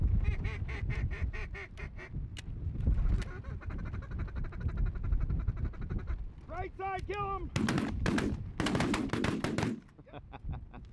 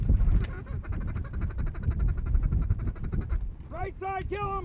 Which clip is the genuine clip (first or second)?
first